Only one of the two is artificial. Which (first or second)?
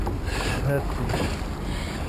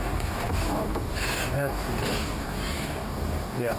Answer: second